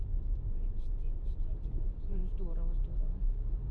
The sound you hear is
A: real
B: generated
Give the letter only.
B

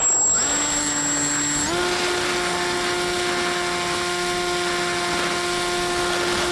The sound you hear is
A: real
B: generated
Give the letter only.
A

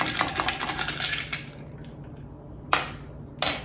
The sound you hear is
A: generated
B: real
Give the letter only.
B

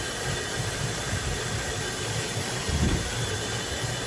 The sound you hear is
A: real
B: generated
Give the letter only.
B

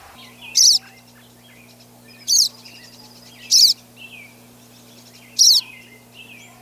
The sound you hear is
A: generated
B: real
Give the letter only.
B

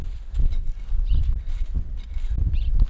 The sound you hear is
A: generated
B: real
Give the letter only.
B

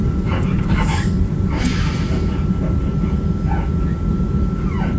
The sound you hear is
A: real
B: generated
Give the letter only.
A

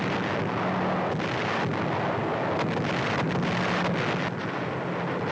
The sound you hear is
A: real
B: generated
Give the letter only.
A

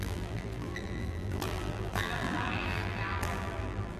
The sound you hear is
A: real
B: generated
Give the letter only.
B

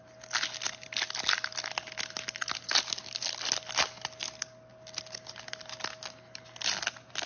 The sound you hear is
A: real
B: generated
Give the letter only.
A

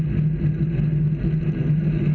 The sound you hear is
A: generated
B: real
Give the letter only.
B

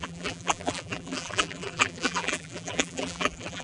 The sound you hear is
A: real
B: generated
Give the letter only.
B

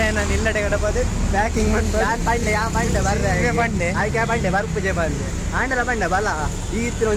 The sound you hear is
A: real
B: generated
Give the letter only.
A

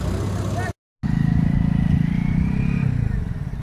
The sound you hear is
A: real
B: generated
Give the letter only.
A